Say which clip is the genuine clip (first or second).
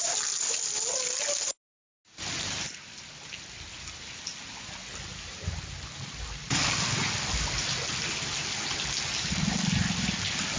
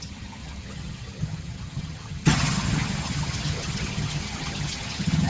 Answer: first